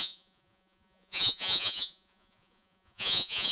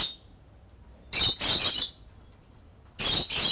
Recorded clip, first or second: second